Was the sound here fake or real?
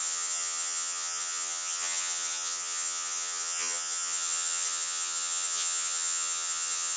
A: fake